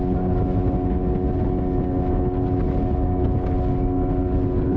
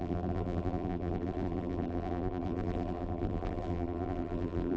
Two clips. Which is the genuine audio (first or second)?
first